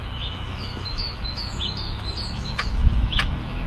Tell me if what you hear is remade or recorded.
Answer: remade